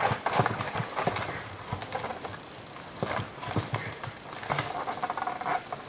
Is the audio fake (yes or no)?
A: no